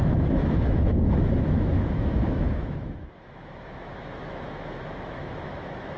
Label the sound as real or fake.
fake